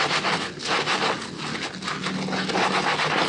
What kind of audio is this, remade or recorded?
recorded